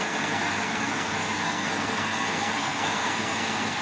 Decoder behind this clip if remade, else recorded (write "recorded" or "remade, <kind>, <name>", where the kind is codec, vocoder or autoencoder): remade, codec, SNAC